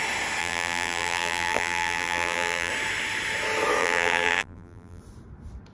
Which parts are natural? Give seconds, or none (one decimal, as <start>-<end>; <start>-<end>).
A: 0.0-0.4; 2.7-3.8; 5.0-5.7